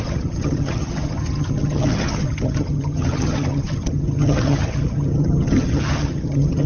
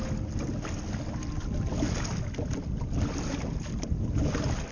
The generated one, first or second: first